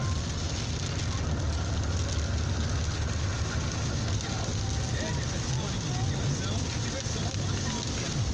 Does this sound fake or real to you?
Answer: real